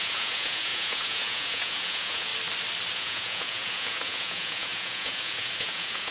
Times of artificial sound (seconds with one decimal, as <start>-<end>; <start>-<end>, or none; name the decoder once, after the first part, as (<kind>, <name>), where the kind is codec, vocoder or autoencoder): 0.0-2.3 (vocoder, Vocos); 2.9-6.1